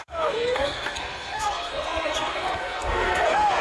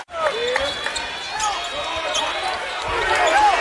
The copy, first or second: first